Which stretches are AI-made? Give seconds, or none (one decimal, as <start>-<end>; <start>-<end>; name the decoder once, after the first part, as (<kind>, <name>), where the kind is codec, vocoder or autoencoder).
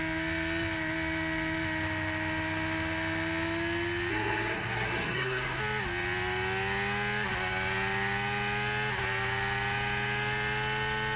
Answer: 4.1-5.6 (codec, SNAC)